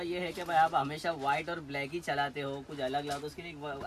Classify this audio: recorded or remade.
recorded